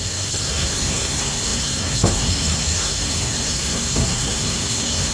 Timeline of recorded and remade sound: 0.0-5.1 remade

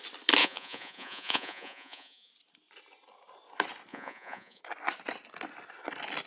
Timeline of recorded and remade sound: 0.0-0.4 recorded; 0.4-2.3 remade; 2.3-3.9 recorded; 3.9-4.6 remade; 4.6-6.3 recorded

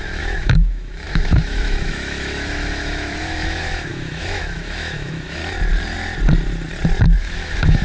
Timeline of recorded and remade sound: 0.0-5.4 remade; 5.4-7.2 recorded; 7.2-7.8 remade

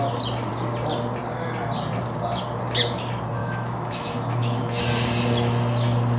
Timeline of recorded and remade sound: 0.0-3.4 recorded; 3.4-4.8 remade; 4.8-6.2 recorded

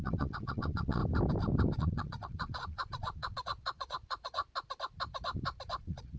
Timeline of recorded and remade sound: 0.0-1.0 remade; 1.0-1.8 recorded; 1.8-4.4 remade; 4.4-5.8 recorded; 5.8-6.2 remade

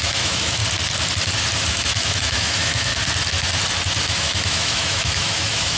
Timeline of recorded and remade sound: 0.0-0.6 remade; 0.6-1.6 recorded; 1.6-2.9 remade; 2.9-4.0 recorded; 4.0-5.8 remade

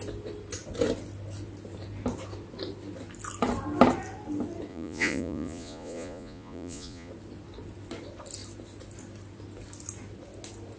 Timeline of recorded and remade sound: 0.0-4.7 recorded; 4.7-7.1 remade; 7.1-10.8 recorded